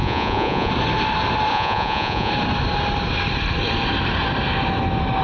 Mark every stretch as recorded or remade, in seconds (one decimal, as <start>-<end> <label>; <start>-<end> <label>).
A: 0.0-0.7 remade; 0.7-1.5 recorded; 1.5-2.3 remade; 2.3-5.2 recorded